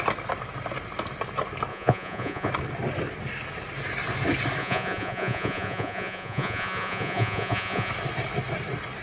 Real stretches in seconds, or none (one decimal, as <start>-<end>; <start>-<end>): 0.0-1.7; 2.5-4.6; 7.9-9.0

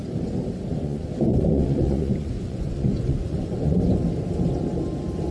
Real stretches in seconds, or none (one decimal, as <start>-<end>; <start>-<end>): 0.0-0.7; 3.9-5.3